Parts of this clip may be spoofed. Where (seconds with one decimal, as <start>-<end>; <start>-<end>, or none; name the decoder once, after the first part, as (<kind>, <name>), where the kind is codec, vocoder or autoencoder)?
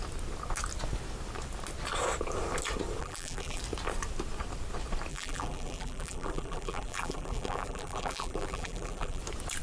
3.0-3.6 (vocoder, BigVGAN v2); 5.1-9.2